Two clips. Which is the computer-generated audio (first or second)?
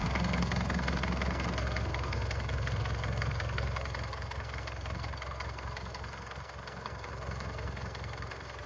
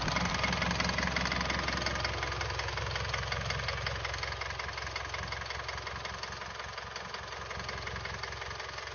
first